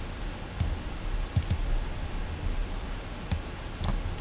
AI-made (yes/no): no